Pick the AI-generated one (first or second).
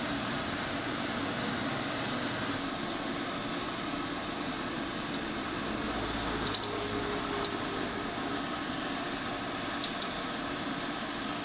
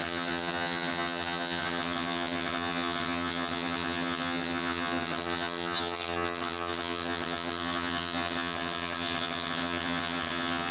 second